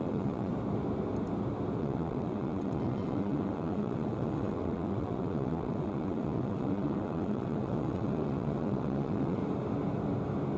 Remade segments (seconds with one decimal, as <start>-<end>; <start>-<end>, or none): 0.0-0.5; 1.8-9.4